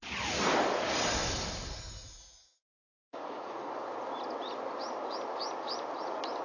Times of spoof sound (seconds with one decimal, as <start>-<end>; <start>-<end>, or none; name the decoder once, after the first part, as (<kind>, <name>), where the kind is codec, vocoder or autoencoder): 2.9-3.7 (vocoder, Vocos)